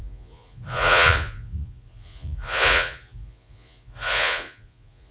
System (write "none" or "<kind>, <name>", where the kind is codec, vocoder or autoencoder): vocoder, Vocos